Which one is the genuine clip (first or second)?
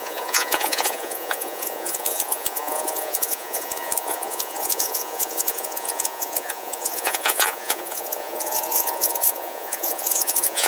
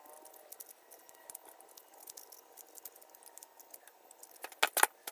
second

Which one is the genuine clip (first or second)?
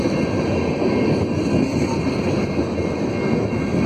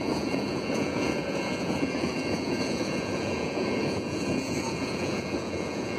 first